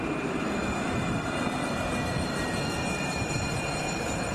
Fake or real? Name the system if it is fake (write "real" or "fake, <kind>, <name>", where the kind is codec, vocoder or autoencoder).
fake, vocoder, BigVGAN v2